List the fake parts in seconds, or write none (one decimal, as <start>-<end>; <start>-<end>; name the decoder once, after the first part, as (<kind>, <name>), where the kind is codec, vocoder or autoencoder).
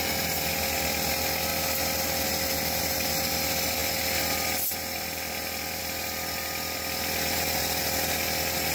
none